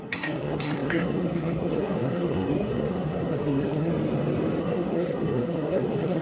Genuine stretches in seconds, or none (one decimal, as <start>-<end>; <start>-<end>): 3.9-4.6